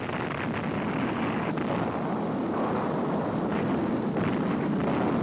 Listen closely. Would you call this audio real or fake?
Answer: real